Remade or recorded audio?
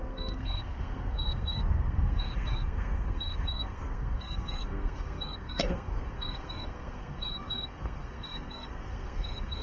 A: remade